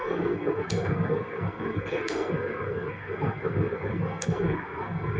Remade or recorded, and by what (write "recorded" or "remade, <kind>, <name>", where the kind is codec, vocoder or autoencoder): remade, codec, SNAC